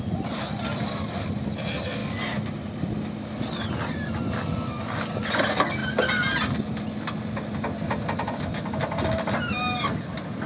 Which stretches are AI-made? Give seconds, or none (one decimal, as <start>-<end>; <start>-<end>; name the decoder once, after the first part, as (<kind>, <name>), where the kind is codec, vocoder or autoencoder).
none